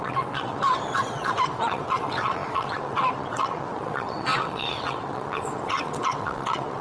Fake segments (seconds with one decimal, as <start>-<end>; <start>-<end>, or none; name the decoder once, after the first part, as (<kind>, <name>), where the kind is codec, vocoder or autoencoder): 0.0-6.8 (vocoder, WaveNeXt)